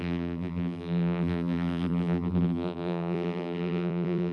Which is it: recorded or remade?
remade